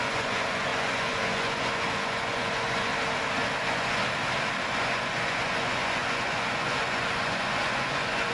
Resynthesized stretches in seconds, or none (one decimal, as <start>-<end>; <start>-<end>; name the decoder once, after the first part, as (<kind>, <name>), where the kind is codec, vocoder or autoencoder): 0.0-2.9 (vocoder, Vocos); 3.6-4.0; 4.7-8.3